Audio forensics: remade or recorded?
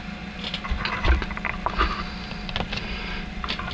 recorded